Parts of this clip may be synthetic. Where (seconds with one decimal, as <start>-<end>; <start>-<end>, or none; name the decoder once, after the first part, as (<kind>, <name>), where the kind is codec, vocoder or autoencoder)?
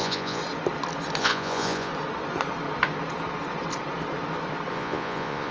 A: 0.0-0.4 (vocoder, Vocos); 1.2-1.9; 4.7-5.5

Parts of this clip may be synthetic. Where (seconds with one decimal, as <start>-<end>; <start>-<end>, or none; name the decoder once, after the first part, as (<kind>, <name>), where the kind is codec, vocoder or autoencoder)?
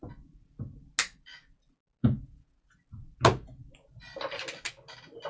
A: 2.0-2.8 (vocoder, Vocos)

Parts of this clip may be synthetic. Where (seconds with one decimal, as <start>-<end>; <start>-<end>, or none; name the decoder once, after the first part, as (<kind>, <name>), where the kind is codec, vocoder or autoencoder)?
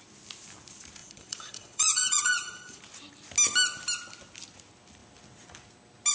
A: 1.0-2.8 (vocoder, Vocos)